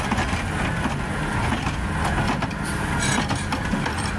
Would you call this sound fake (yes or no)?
no